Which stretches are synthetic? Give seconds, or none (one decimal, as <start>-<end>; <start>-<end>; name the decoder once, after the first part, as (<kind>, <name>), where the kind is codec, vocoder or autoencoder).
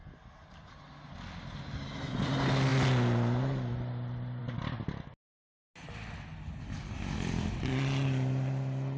none